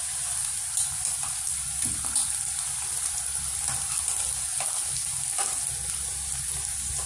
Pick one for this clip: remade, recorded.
recorded